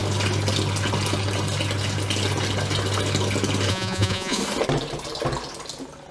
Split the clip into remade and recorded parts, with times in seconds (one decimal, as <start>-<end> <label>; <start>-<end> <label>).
0.0-3.7 recorded; 3.7-4.4 remade; 4.4-6.1 recorded